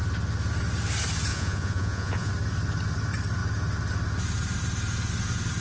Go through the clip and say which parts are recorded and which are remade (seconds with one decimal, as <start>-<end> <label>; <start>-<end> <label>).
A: 0.0-1.3 recorded; 1.3-2.3 remade; 2.3-5.6 recorded